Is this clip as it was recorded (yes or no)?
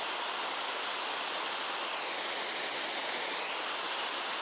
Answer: yes